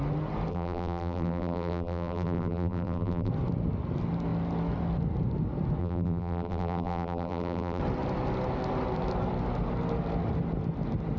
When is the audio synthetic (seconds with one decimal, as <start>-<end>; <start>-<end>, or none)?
0.5-3.3; 5.8-7.8